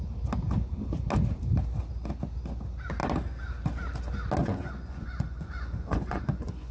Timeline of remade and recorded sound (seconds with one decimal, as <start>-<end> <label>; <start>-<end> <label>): 0.0-4.4 recorded; 4.4-6.7 remade